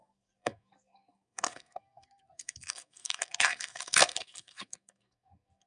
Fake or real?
fake